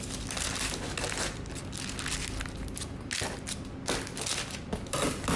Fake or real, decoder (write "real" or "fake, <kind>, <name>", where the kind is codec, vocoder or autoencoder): real